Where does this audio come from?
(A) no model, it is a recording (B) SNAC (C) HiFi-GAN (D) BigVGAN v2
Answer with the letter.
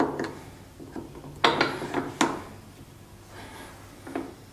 A